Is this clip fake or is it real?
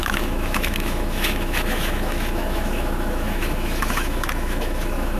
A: fake